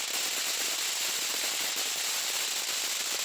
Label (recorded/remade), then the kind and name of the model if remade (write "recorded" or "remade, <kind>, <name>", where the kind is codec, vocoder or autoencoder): recorded